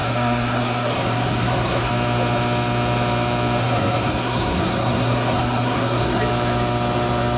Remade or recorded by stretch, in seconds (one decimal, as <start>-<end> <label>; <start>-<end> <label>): 0.0-1.9 remade; 1.9-3.6 recorded; 3.6-6.2 remade; 6.2-7.4 recorded